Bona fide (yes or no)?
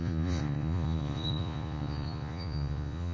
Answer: no